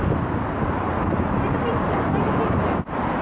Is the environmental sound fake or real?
real